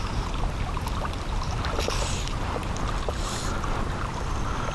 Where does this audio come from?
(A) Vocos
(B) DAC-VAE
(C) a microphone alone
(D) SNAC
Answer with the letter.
C